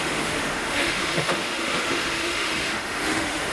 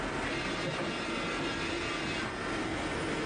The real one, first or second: second